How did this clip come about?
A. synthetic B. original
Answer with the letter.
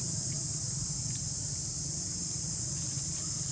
B